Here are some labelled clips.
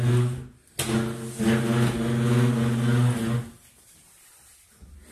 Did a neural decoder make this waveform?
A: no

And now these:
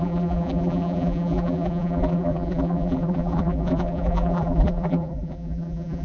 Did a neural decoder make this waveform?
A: yes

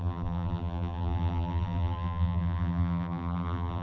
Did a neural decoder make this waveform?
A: yes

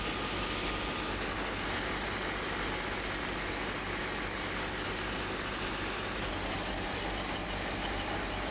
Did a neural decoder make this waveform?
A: no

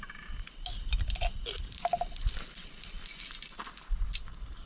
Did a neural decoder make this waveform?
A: no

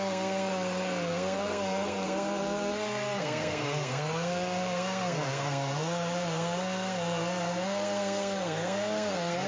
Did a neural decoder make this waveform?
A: yes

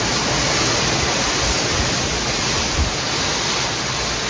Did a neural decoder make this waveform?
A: no